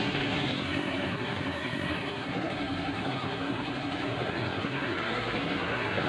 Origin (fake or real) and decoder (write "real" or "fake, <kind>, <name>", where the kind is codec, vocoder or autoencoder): fake, codec, SNAC